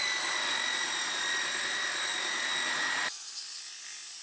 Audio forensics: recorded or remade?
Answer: recorded